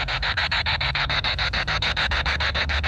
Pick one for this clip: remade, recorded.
remade